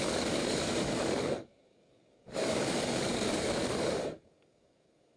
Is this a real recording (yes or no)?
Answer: no